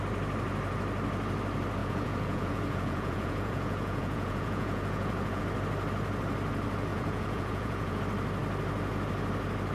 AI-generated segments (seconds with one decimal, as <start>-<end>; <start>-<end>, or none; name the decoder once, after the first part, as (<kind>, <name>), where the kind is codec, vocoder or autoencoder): 1.8-5.4 (vocoder, Vocos); 6.9-8.0